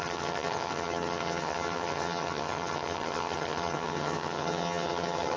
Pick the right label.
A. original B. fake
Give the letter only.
B